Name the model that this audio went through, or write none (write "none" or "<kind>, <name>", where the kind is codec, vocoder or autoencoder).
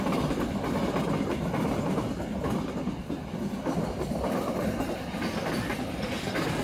none